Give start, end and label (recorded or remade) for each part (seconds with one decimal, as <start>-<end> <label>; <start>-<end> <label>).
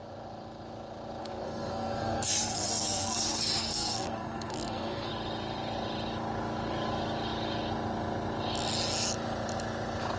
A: 0.0-1.2 recorded; 1.2-5.1 remade; 5.1-10.2 recorded